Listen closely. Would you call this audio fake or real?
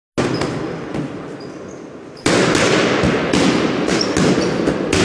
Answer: real